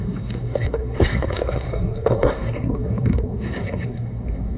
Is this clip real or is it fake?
fake